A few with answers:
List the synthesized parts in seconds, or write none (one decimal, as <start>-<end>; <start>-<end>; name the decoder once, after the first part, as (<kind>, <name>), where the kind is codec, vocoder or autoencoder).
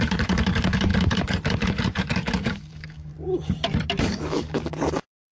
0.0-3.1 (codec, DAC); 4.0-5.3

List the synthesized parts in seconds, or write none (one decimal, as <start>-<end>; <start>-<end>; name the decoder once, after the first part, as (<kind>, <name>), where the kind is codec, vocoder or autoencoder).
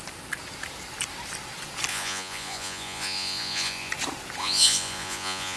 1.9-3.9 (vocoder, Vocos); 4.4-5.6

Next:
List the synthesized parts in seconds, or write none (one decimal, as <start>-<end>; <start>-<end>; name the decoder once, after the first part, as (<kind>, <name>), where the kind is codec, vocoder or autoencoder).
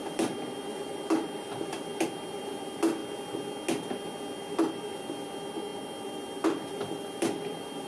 0.0-1.9 (vocoder, BigVGAN v2); 2.4-3.0; 4.4-7.9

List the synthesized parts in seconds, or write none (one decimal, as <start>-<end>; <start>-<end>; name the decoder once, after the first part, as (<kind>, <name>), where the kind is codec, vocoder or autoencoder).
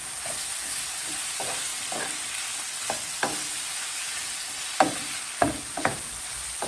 0.0-1.7 (vocoder, BigVGAN v2); 5.6-6.7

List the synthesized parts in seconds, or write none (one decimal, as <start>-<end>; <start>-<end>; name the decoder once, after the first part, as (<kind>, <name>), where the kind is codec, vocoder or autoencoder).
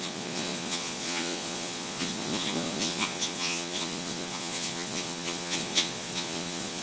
0.0-6.8 (vocoder, Vocos)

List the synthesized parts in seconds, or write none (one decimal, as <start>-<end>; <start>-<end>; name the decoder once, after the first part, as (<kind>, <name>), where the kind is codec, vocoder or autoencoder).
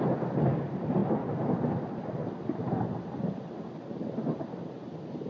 0.0-5.3 (vocoder, BigVGAN v2)